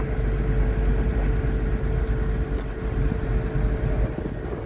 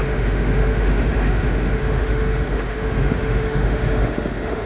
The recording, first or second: first